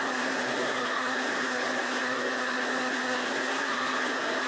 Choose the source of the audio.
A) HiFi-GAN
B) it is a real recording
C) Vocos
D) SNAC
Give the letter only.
D